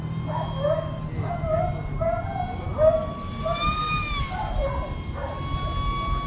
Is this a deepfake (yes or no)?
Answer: no